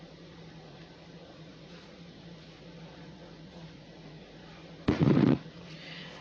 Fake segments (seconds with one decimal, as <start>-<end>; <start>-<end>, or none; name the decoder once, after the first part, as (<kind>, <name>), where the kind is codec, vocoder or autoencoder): 0.0-6.2 (vocoder, Vocos)